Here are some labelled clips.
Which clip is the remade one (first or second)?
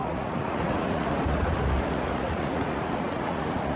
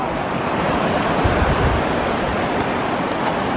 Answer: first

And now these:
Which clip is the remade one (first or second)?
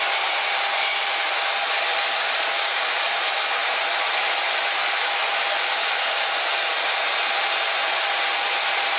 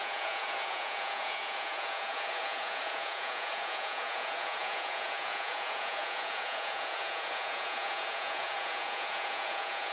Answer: second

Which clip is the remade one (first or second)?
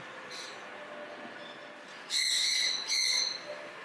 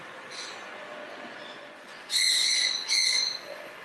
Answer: second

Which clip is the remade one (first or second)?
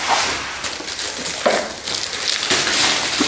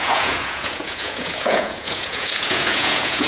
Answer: second